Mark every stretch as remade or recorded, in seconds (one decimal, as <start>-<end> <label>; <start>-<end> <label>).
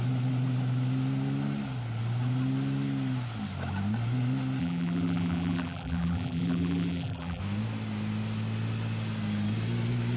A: 0.0-4.6 recorded; 4.6-7.4 remade; 7.4-10.2 recorded